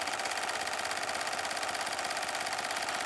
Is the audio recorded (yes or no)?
yes